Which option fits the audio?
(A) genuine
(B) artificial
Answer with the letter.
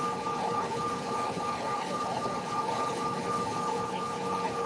B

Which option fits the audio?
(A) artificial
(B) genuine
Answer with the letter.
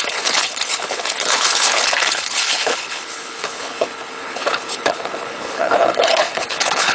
A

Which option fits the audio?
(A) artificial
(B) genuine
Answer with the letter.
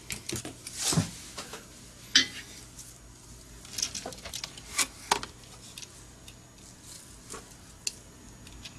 B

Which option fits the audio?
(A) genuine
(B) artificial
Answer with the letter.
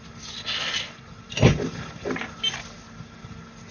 A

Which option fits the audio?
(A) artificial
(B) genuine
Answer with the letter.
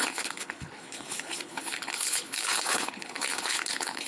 A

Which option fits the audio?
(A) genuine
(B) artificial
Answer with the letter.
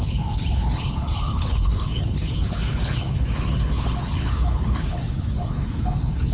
B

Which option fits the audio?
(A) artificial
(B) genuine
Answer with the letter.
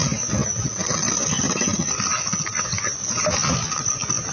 B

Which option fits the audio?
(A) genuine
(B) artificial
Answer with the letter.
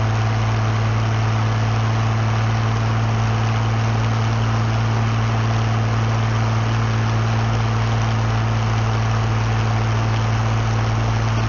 A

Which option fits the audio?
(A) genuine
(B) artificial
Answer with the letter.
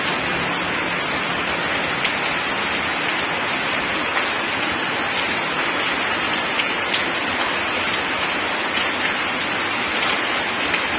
A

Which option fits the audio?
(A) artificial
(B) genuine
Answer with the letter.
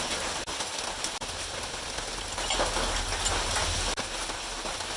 B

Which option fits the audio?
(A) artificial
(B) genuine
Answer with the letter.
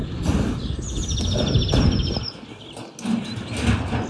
B